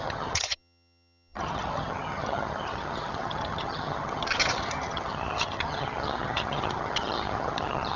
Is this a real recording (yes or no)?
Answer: no